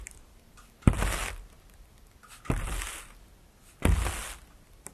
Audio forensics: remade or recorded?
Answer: recorded